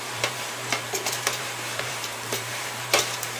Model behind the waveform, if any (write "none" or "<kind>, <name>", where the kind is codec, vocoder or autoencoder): vocoder, BigVGAN v2